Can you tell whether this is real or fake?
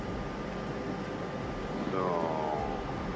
real